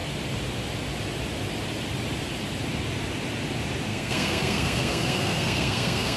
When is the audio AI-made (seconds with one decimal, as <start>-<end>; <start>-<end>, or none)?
3.9-6.2